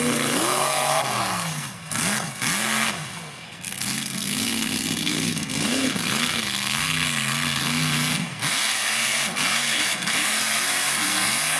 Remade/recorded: remade